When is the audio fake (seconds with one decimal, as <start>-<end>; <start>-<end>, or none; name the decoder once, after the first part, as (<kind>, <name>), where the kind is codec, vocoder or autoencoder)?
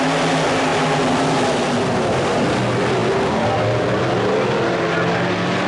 none